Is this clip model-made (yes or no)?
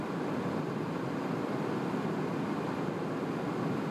no